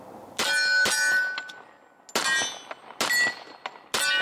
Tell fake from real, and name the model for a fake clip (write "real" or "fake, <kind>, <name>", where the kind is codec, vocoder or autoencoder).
real